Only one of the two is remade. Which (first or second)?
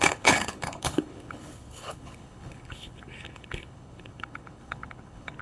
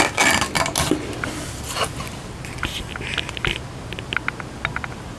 first